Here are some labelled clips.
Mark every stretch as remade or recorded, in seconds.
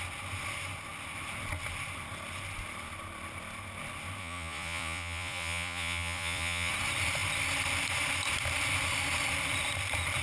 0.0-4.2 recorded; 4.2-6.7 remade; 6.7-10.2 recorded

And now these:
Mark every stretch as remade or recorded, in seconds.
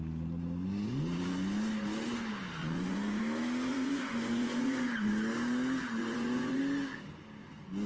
0.0-2.6 recorded; 2.6-3.2 remade; 3.2-3.7 recorded; 3.7-5.1 remade; 5.1-6.0 recorded; 6.0-6.6 remade; 6.6-7.9 recorded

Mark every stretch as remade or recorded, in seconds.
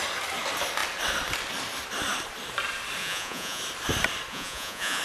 0.0-3.0 recorded; 3.0-3.6 remade; 3.6-4.3 recorded; 4.3-5.0 remade